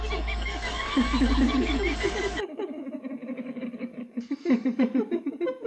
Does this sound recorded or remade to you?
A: remade